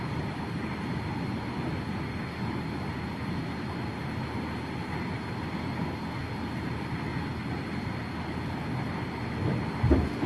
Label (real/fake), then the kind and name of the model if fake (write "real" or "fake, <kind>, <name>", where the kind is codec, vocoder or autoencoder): real